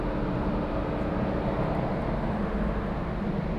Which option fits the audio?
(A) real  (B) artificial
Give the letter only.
A